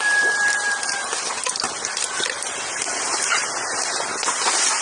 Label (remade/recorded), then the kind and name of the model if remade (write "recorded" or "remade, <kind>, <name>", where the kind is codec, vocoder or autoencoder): recorded